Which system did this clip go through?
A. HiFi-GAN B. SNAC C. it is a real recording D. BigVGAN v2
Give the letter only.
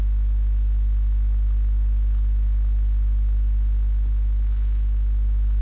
C